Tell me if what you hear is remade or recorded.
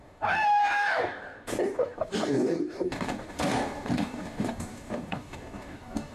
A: remade